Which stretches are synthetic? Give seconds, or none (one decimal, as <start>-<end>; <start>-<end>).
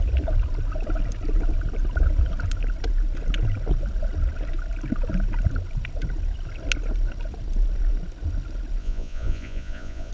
8.8-10.1